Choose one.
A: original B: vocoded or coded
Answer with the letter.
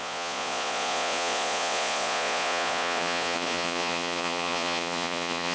B